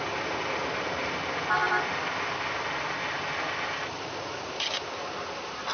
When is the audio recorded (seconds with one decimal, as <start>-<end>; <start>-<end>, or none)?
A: 0.0-5.7